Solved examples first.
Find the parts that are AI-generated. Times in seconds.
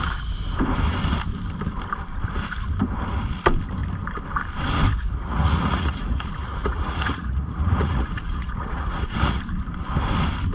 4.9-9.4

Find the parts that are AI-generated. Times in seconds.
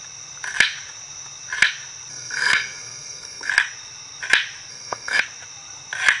2.1-3.5; 4.7-5.2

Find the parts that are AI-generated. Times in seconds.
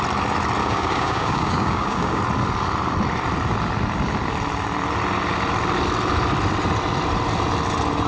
0.6-2.2